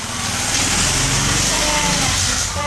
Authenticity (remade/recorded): recorded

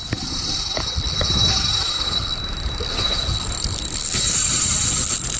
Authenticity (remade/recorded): remade